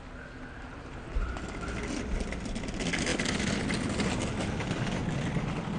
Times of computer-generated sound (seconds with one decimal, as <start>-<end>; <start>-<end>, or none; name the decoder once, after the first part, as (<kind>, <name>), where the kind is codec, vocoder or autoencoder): none